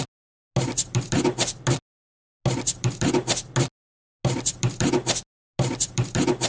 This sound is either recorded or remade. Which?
recorded